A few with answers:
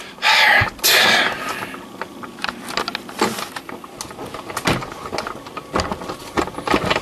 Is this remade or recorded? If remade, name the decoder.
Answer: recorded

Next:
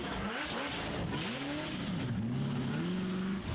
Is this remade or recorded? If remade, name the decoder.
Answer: remade, codec, DAC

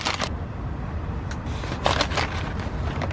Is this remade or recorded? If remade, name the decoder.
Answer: recorded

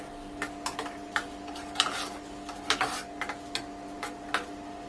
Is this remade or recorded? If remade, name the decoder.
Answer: recorded